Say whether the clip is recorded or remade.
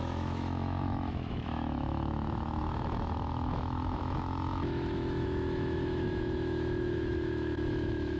remade